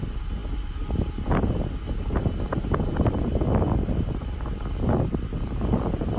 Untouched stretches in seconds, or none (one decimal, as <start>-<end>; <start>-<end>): 0.0-6.2